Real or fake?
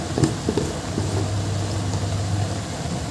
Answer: real